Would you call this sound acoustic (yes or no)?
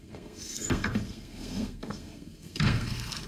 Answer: no